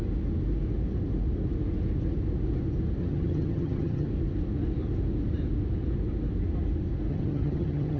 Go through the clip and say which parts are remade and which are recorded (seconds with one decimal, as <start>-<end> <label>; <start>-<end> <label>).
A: 0.0-3.0 recorded; 3.0-4.1 remade; 4.1-7.1 recorded; 7.1-8.0 remade